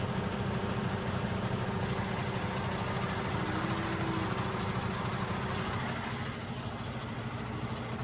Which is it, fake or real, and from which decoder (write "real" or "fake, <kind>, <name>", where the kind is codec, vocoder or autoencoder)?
real